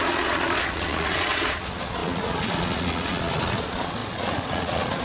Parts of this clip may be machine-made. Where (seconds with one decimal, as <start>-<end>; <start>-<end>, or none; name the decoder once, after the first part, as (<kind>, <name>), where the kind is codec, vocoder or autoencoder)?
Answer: 0.0-5.0 (vocoder, Vocos)